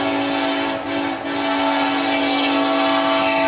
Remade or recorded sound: recorded